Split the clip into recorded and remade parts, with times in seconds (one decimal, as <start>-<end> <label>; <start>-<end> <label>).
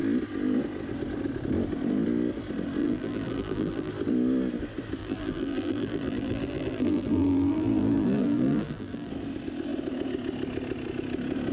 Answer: 0.0-2.8 recorded; 2.8-3.9 remade; 3.9-5.0 recorded; 5.0-9.1 remade; 9.1-11.5 recorded